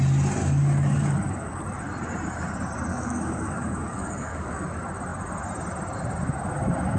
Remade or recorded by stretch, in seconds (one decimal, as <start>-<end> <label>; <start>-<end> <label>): 0.0-0.4 recorded; 0.4-1.6 remade; 1.6-2.9 recorded; 2.9-4.6 remade; 4.6-7.0 recorded